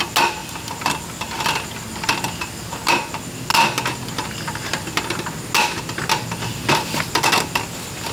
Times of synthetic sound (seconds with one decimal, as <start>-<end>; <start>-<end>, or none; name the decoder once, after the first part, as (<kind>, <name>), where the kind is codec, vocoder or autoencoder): none